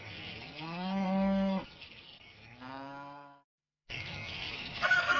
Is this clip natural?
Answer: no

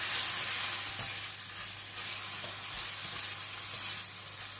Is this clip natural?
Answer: yes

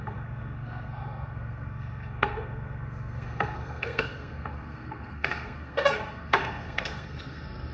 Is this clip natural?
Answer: no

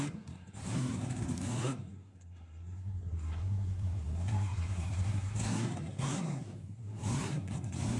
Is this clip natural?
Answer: no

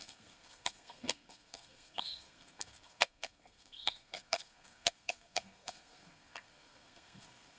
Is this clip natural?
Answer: no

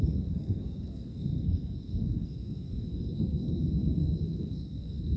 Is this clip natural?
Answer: no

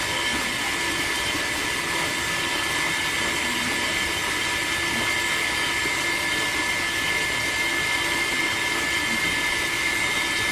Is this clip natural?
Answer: yes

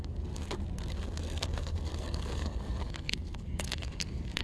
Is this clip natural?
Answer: no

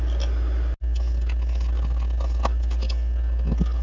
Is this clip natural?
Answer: yes